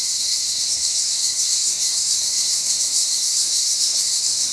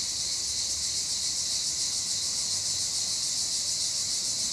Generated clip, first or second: first